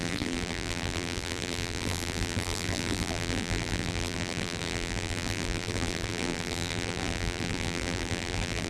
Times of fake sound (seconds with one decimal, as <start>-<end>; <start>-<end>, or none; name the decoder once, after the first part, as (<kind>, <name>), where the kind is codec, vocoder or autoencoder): 0.0-8.7 (vocoder, BigVGAN v2)